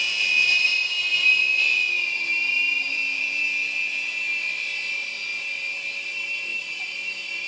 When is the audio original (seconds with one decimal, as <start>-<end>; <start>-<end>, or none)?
0.0-7.5